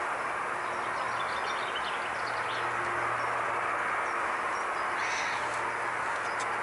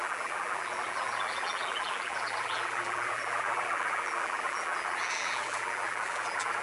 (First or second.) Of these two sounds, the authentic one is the first